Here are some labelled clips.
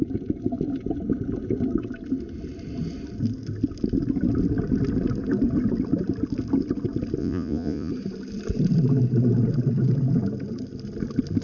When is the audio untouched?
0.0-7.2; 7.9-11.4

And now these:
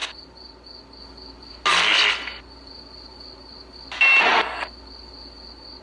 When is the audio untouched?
0.0-5.8

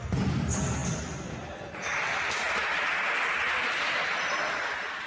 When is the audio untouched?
0.0-5.1

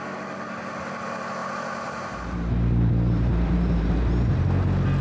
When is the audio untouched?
0.0-1.4; 4.4-5.0

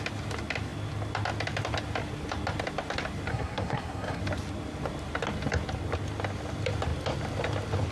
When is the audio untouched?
0.0-3.3; 4.2-7.9

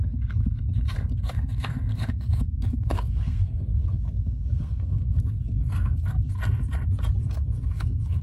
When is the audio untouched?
6.4-7.2

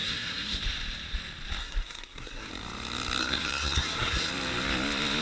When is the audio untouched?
0.6-1.6; 2.5-3.2; 4.3-5.2